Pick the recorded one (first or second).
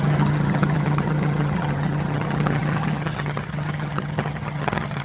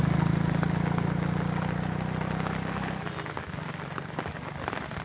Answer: second